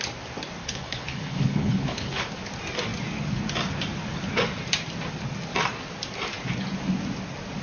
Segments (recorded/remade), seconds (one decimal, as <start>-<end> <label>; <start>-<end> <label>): 0.0-0.6 recorded; 0.6-2.3 remade; 2.3-7.6 recorded